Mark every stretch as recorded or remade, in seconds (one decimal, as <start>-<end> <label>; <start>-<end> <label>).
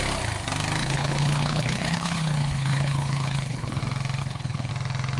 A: 0.0-0.8 recorded; 0.8-3.8 remade; 3.8-4.2 recorded; 4.2-4.7 remade; 4.7-5.2 recorded